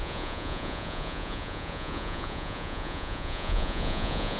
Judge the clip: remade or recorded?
remade